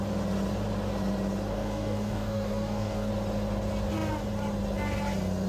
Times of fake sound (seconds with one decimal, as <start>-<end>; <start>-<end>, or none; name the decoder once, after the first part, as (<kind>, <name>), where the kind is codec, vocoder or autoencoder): 1.5-3.1 (codec, DAC)